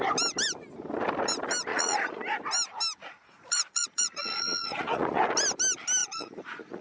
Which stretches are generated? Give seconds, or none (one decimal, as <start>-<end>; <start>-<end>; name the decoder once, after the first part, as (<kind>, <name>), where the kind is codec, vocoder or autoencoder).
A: 1.7-2.2 (vocoder, Vocos); 3.0-5.2; 6.0-6.8